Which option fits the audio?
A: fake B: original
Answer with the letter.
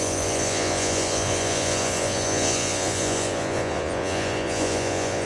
A